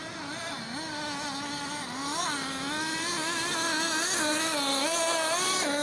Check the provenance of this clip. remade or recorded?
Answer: recorded